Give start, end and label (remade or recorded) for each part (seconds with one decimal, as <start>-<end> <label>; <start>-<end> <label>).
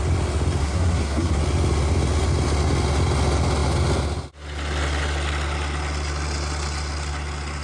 0.0-0.6 recorded; 0.6-1.4 remade; 1.4-7.6 recorded